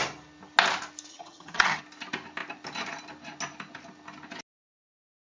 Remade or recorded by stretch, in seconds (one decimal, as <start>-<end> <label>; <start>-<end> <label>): 0.0-1.1 recorded; 1.1-1.8 remade; 1.8-5.2 recorded